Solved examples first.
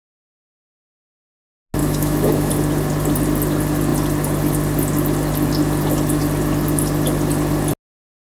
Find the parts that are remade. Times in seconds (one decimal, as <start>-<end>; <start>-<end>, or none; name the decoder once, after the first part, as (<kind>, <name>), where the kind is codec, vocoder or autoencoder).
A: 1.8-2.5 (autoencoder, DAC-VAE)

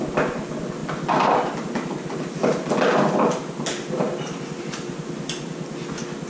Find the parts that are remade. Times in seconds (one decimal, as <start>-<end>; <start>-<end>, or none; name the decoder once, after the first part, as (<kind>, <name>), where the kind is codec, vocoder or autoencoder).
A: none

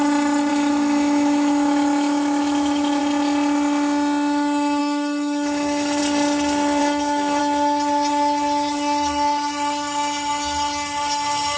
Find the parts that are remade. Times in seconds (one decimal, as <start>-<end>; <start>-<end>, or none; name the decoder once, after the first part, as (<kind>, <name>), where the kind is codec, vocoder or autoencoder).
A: 0.5-3.0 (autoencoder, DAC-VAE); 4.8-6.0; 6.8-7.4

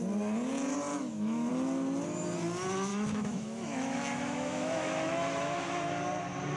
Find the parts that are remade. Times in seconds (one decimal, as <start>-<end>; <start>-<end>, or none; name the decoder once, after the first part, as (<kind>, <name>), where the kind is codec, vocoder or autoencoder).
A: 0.9-1.5 (autoencoder, DAC-VAE); 2.9-5.9

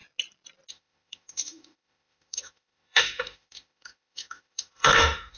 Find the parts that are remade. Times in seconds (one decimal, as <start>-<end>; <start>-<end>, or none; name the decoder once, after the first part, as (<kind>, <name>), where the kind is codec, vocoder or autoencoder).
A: 0.7-5.4 (autoencoder, DAC-VAE)

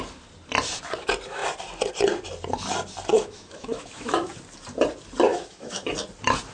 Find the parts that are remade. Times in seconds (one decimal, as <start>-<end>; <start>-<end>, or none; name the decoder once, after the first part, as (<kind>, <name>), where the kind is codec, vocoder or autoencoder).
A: 3.1-4.3 (autoencoder, DAC-VAE); 5.3-5.9